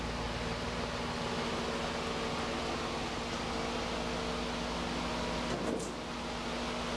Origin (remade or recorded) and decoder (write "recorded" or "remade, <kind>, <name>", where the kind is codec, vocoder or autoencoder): recorded